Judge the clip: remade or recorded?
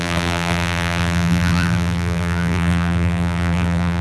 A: remade